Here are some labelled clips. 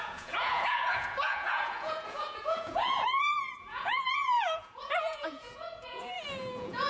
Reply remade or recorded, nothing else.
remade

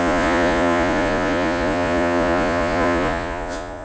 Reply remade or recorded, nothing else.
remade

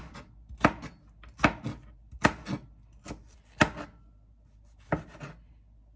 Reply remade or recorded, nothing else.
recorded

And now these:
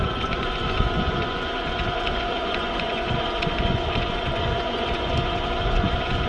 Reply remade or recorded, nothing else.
remade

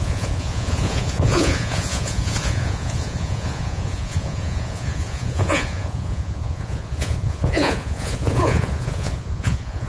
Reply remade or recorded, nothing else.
remade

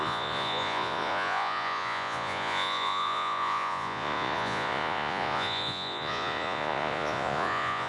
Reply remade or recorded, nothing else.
remade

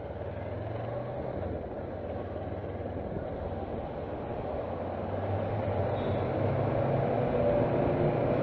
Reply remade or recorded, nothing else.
recorded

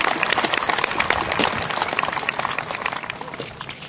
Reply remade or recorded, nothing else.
recorded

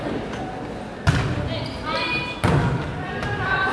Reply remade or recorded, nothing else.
recorded